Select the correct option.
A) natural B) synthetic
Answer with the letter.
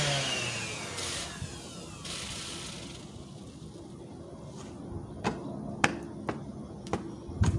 A